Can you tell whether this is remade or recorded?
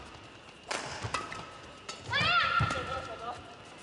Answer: remade